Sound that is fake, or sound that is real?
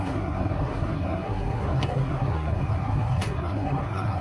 fake